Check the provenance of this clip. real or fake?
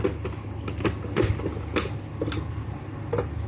real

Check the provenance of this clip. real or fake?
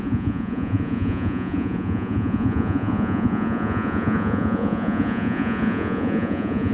fake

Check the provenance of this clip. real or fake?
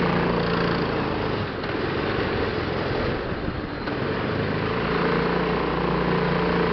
real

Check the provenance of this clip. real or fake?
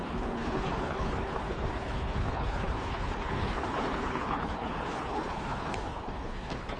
fake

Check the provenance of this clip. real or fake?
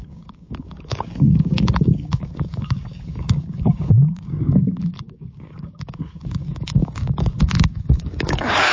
fake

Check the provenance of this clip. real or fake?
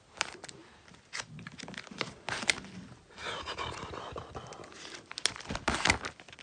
real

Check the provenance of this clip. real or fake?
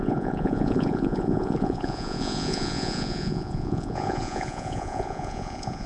fake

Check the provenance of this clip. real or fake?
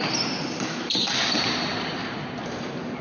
real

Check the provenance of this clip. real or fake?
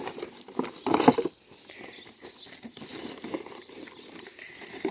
fake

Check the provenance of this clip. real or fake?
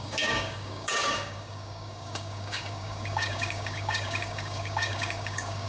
fake